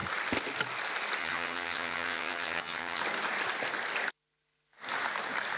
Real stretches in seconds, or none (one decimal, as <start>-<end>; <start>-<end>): 0.0-1.2; 3.0-5.6